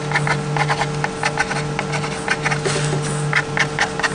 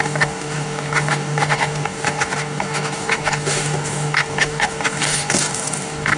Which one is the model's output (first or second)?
second